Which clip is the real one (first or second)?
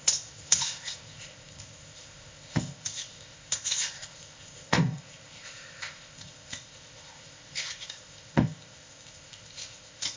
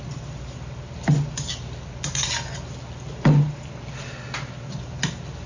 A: second